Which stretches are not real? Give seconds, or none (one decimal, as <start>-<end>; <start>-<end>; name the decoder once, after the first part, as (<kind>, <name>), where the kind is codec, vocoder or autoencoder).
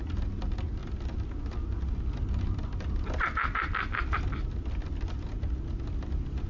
none